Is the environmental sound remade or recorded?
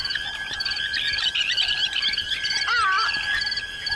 recorded